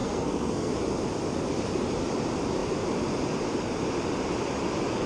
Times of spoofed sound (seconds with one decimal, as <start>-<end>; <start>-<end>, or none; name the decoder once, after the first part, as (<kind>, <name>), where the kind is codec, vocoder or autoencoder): 0.0-0.7 (codec, SNAC)